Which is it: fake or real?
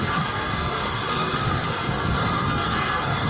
fake